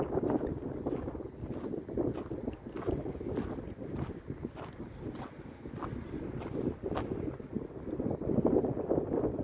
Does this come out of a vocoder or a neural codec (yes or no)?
no